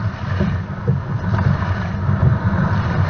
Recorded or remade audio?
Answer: recorded